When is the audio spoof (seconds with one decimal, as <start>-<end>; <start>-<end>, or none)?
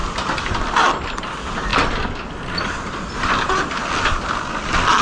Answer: none